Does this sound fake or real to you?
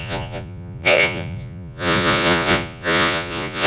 fake